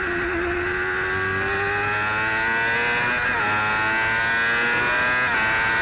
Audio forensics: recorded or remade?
recorded